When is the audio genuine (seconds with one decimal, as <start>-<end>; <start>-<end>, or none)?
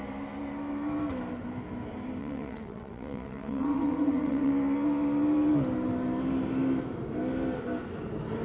0.0-2.2; 4.5-8.4